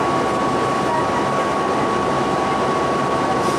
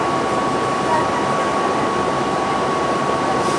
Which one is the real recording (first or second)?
first